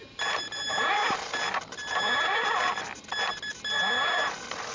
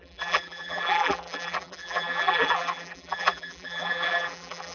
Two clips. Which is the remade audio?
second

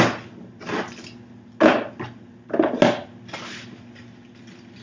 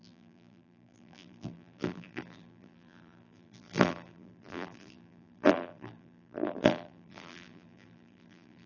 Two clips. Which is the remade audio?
second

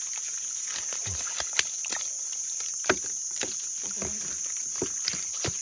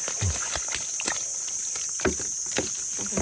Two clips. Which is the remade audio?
first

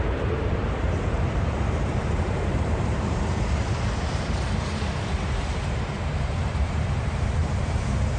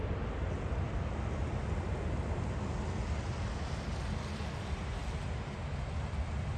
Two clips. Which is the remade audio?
first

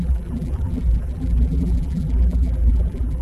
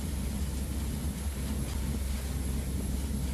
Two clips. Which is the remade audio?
first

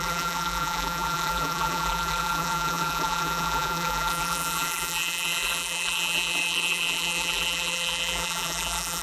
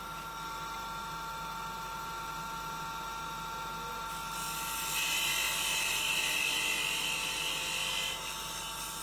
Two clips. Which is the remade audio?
first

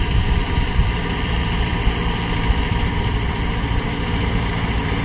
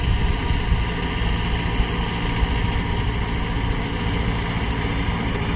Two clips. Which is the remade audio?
first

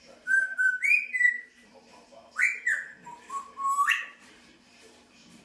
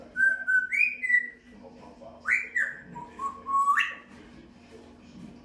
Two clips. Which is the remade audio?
first